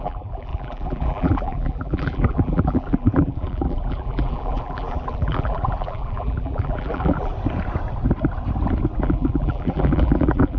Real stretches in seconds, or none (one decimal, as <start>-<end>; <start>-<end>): 7.3-9.0